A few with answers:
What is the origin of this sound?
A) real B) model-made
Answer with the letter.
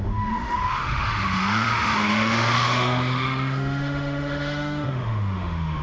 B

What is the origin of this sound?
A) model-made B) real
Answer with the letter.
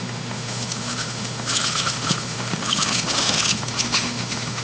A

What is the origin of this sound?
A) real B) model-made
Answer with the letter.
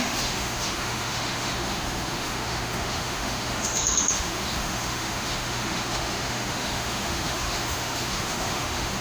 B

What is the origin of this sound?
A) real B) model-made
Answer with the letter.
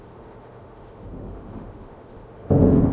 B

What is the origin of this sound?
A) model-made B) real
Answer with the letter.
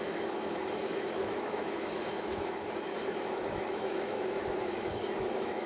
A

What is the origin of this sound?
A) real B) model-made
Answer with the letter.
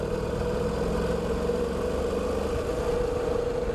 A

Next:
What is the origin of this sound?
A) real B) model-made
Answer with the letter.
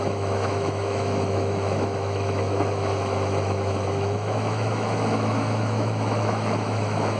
B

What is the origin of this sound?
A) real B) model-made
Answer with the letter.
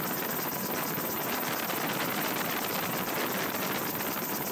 A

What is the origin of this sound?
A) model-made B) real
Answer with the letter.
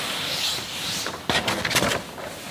B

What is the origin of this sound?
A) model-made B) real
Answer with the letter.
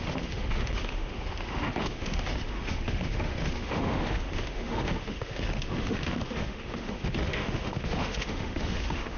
A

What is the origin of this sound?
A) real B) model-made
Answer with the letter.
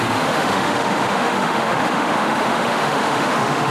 B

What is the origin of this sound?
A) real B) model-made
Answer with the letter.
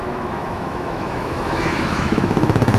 B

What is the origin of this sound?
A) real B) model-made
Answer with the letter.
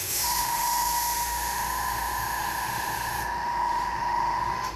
B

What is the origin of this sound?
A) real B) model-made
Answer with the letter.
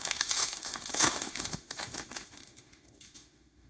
B